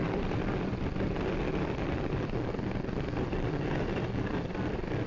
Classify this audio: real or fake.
fake